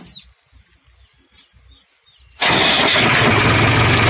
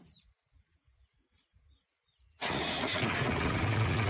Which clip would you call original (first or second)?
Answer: first